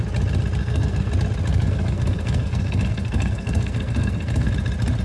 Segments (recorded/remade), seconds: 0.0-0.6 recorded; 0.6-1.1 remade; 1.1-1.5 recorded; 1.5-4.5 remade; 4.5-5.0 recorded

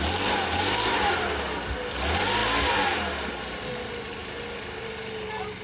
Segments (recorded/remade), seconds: 0.0-5.6 recorded

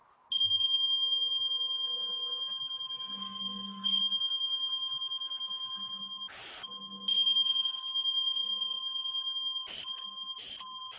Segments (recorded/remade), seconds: 0.0-3.2 recorded; 3.2-4.0 remade; 4.0-11.0 recorded

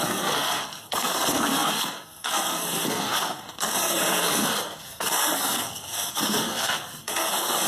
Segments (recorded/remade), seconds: 0.0-7.7 remade

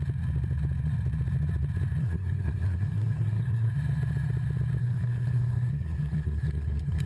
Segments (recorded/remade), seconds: 0.0-2.0 recorded; 2.0-3.7 remade; 3.7-4.8 recorded; 4.8-7.1 remade

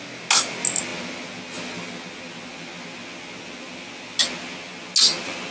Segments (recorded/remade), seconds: 0.0-5.5 recorded

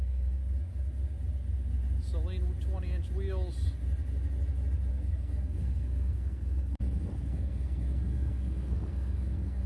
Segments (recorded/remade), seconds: 0.0-0.4 remade; 0.4-4.9 recorded; 4.9-9.7 remade